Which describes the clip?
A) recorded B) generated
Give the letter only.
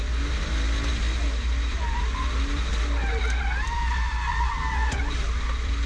A